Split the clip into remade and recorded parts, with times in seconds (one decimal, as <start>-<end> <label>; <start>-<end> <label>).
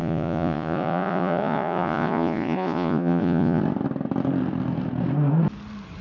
0.0-3.6 remade; 3.6-6.0 recorded